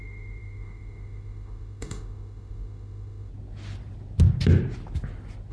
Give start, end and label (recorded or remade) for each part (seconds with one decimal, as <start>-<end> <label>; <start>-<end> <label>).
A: 0.0-3.3 remade; 3.3-5.5 recorded